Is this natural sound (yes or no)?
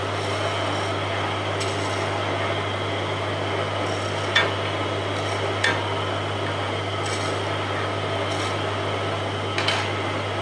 yes